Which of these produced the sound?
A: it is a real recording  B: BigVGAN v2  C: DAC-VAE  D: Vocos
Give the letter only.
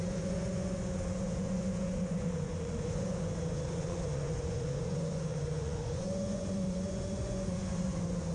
D